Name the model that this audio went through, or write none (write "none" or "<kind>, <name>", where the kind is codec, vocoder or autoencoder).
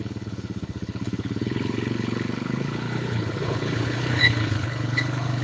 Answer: codec, HILCodec